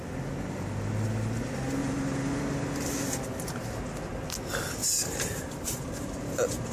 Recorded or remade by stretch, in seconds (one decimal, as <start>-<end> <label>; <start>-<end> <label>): 0.0-1.8 recorded; 1.8-2.4 remade; 2.4-4.8 recorded; 4.8-6.7 remade